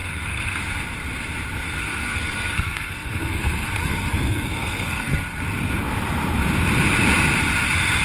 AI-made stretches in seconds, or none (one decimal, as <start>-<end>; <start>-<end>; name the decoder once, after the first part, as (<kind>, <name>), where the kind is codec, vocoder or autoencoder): 0.0-0.6 (codec, SNAC); 1.8-5.4